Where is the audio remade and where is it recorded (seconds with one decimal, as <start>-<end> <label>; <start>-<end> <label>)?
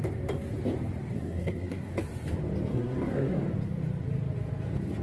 0.0-1.1 recorded; 1.1-1.9 remade; 1.9-2.7 recorded; 2.7-3.4 remade; 3.4-5.0 recorded